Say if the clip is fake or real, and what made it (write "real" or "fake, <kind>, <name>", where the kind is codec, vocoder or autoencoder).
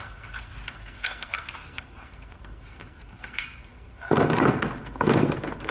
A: fake, codec, SNAC